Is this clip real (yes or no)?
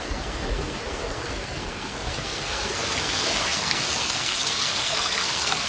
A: no